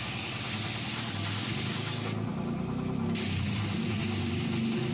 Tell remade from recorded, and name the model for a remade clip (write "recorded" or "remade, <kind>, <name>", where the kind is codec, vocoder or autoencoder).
recorded